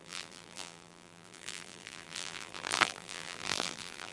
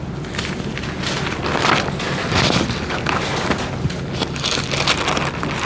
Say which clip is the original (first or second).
second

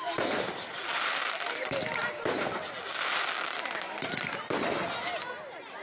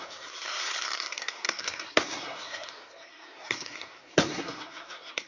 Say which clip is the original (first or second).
first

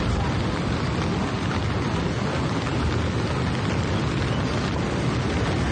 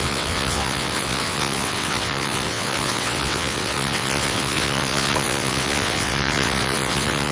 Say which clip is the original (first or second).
first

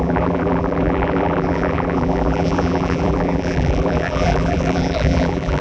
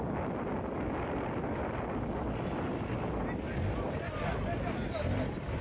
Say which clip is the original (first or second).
second